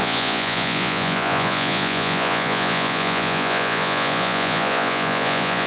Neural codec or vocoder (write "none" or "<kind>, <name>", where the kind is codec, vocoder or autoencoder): vocoder, Vocos